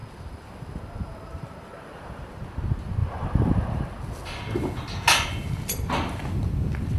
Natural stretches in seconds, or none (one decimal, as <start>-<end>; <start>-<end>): 0.6-1.3; 2.4-3.0; 4.0-7.0